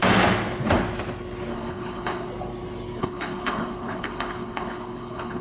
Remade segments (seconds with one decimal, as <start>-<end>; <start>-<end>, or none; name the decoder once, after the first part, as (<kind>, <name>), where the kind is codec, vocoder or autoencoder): 1.5-2.3 (codec, HILCodec); 3.0-5.4